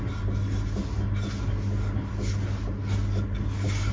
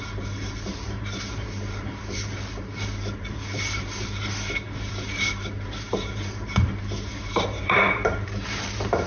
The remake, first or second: second